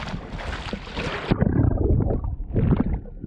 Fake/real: real